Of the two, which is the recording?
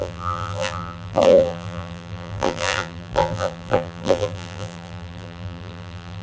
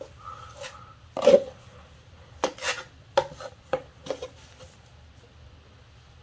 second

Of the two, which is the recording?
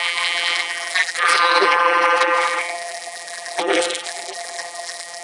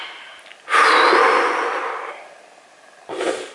second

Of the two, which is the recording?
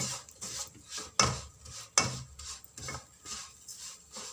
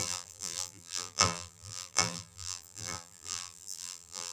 first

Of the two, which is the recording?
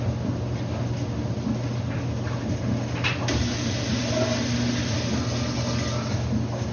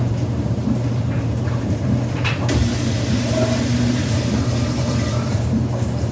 first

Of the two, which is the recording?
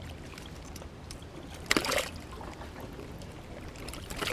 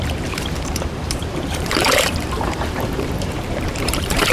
first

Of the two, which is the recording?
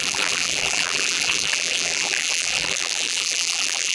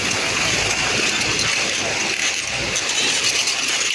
second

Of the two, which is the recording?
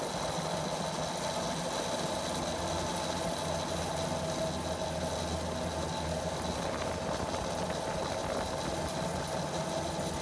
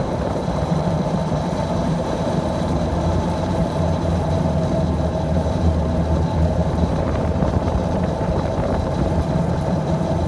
first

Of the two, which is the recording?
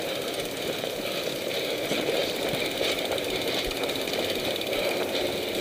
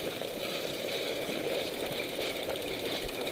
first